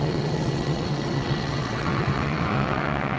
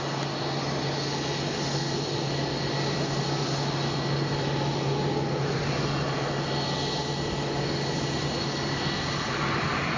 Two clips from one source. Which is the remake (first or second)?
first